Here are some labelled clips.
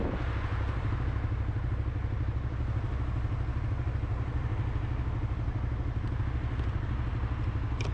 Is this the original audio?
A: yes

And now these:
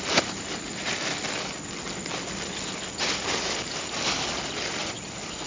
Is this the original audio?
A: yes